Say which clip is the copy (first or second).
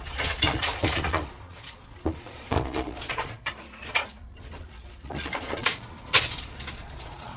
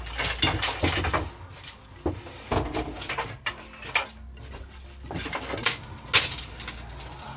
first